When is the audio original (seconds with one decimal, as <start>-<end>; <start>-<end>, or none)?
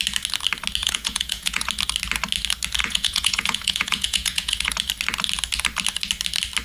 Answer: 0.0-0.8; 1.7-2.8; 4.7-6.6